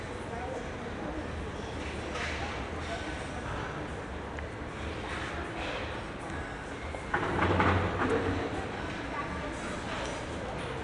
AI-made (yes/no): no